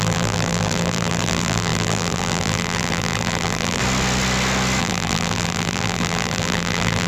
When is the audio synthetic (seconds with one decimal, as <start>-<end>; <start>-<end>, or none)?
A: 0.0-3.8; 4.8-7.1